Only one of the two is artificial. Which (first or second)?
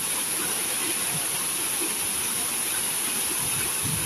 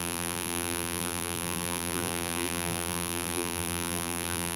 second